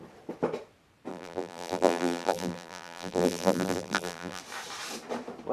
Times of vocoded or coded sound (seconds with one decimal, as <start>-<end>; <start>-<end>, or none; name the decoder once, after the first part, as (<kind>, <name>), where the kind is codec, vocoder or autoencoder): 1.1-4.4 (vocoder, BigVGAN v2)